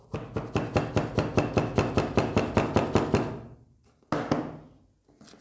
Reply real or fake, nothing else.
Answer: real